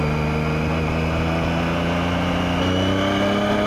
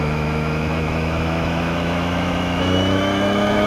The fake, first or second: second